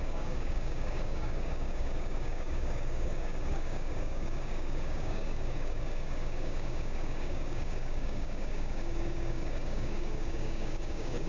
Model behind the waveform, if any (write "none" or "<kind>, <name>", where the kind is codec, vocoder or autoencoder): codec, DAC